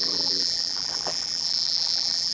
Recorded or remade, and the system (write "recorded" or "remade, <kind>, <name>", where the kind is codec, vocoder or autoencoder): remade, vocoder, BigVGAN v2